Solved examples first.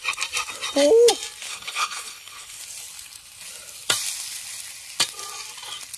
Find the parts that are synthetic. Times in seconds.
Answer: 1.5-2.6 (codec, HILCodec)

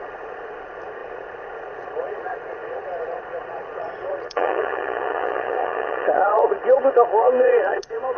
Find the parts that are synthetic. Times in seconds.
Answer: 0.0-8.2 (vocoder, Vocos)

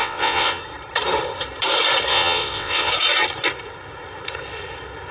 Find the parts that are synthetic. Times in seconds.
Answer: 0.0-0.6 (vocoder, WaveNeXt); 2.1-2.9

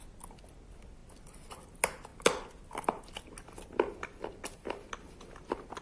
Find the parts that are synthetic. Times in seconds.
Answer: none

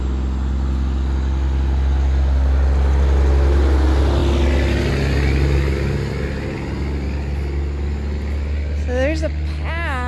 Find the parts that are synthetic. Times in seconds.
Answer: none

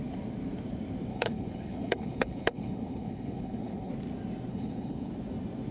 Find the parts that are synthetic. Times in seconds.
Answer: 1.1-3.9 (codec, HILCodec); 4.5-5.1

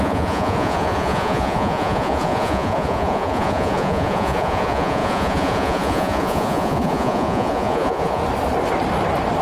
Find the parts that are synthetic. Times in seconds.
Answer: 0.0-8.2 (vocoder, Vocos)

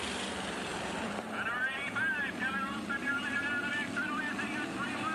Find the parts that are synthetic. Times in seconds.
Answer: 0.0-3.5 (vocoder, BigVGAN v2); 4.2-5.1